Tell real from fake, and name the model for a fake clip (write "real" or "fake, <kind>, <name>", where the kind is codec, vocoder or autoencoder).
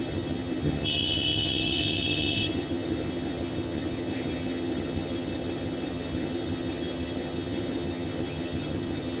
fake, vocoder, HiFi-GAN